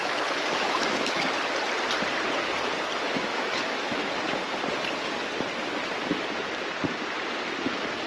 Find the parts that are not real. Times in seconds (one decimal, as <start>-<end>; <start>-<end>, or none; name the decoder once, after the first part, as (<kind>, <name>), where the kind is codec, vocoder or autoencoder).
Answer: 0.0-1.2 (autoencoder, DAC-VAE); 3.3-4.1